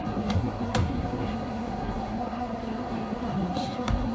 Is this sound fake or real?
fake